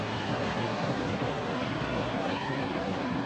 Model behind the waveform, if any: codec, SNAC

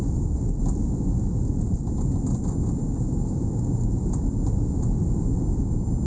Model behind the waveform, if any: none